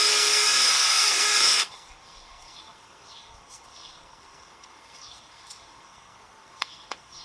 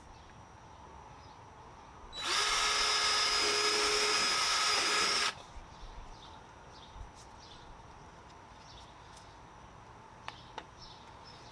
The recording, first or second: second